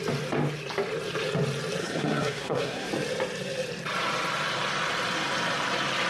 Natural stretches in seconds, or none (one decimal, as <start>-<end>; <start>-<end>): 0.0-1.8; 2.9-6.1